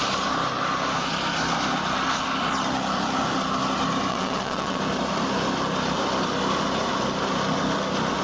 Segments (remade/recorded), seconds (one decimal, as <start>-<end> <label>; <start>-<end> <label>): 0.0-4.1 recorded; 4.1-4.8 remade; 4.8-8.2 recorded